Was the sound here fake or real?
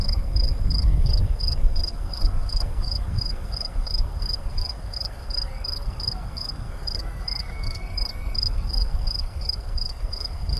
fake